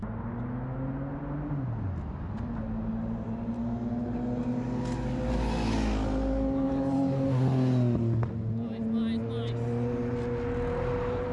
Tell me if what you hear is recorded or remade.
recorded